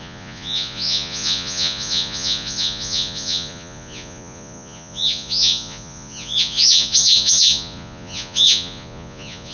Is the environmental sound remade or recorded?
remade